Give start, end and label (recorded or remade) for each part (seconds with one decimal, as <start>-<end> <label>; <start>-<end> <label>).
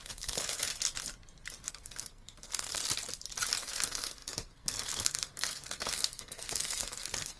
0.0-0.7 remade; 0.7-1.7 recorded; 1.7-2.8 remade; 2.8-3.6 recorded; 3.6-7.4 remade